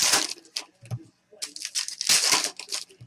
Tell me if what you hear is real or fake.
real